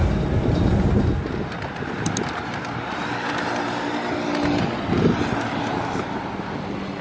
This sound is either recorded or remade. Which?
recorded